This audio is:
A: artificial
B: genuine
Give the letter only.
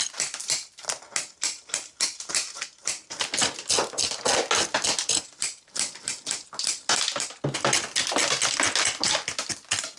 B